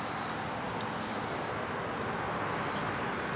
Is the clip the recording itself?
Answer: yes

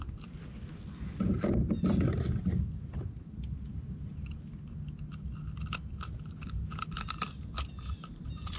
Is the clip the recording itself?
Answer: yes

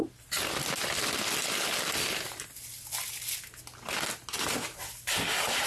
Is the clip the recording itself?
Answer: yes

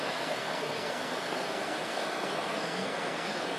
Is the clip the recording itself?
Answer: no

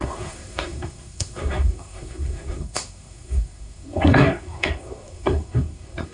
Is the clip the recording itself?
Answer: no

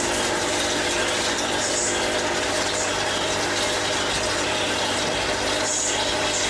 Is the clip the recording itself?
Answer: yes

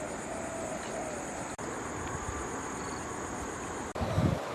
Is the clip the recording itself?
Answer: yes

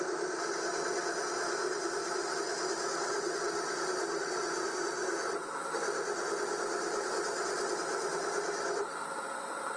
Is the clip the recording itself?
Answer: yes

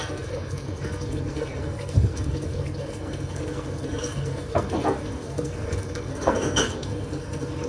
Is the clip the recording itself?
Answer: no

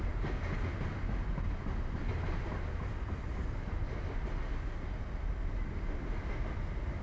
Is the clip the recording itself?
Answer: yes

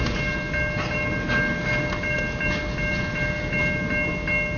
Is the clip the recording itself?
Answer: yes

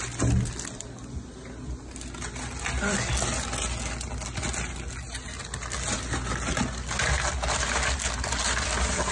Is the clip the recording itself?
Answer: yes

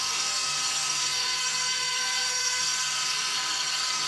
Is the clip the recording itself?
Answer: no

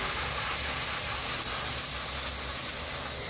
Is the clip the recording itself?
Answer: yes